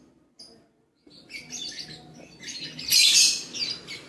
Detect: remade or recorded recorded